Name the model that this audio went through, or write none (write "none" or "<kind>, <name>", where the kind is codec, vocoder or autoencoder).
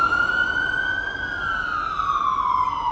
none